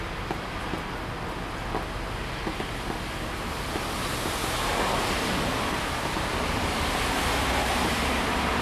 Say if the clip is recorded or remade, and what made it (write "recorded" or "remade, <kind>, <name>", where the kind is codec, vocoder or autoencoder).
recorded